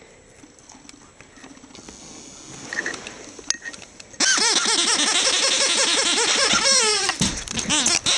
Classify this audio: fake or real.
real